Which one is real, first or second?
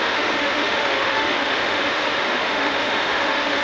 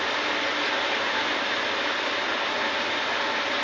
second